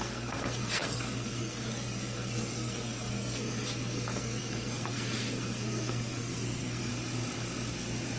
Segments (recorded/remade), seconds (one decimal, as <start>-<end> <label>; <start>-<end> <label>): 0.0-6.9 remade; 6.9-8.2 recorded